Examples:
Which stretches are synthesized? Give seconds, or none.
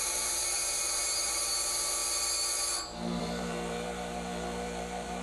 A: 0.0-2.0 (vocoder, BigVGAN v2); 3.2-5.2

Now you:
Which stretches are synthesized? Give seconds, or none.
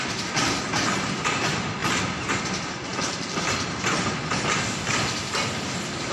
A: 2.9-6.1 (vocoder, BigVGAN v2)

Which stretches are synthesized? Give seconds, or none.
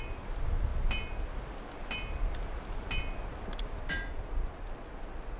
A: none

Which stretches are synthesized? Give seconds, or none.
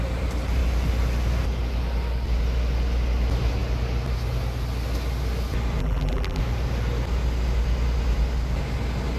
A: 5.8-6.4 (vocoder, BigVGAN v2)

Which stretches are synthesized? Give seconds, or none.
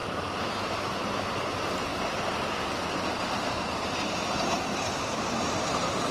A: 0.0-1.9 (vocoder, BigVGAN v2); 2.9-6.1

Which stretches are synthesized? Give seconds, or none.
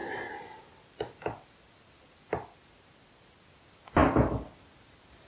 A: none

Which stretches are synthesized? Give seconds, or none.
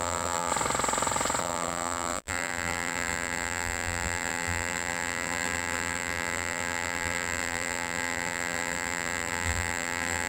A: 0.0-0.5 (vocoder, BigVGAN v2); 1.4-10.3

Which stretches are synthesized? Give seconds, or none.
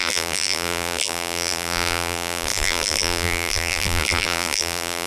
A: 0.0-5.1 (vocoder, BigVGAN v2)